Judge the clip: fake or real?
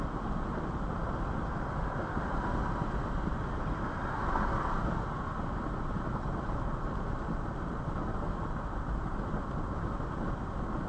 real